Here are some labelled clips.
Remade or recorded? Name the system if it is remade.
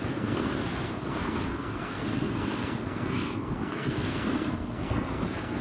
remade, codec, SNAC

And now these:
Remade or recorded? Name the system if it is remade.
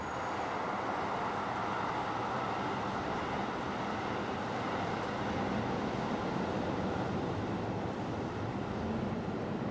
recorded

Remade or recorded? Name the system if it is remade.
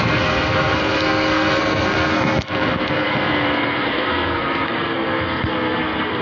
remade, codec, SNAC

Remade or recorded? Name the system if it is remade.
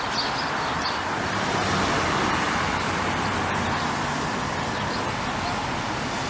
recorded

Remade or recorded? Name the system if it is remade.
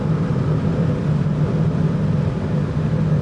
recorded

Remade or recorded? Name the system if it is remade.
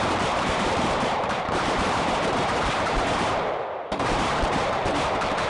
remade, vocoder, BigVGAN v2